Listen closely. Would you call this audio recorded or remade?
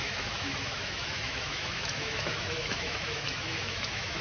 remade